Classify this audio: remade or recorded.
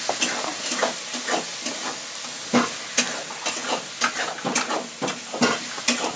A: recorded